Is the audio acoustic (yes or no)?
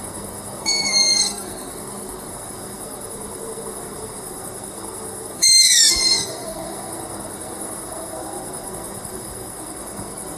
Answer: no